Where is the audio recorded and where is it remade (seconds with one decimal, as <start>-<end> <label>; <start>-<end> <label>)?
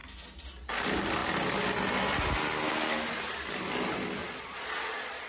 0.0-4.2 recorded; 4.2-5.3 remade